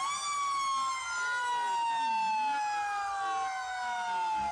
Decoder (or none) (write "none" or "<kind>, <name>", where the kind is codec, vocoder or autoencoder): none